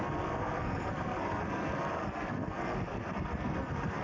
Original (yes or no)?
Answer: no